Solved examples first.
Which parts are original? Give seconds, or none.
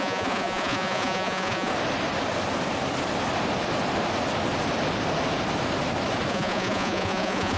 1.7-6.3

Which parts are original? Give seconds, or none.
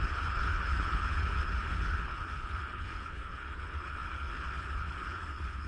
none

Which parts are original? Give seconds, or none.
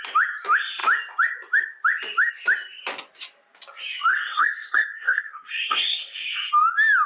0.0-4.1; 6.5-7.1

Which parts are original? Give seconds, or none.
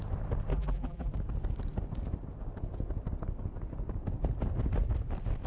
0.0-0.5; 1.1-5.5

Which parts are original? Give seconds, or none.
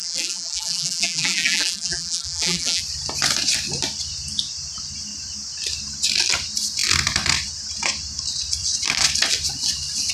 2.8-10.1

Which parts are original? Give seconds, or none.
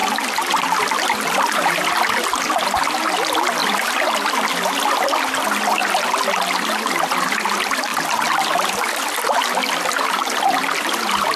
1.7-3.6; 4.5-7.9; 9.9-11.4